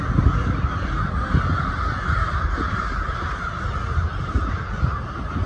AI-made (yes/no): no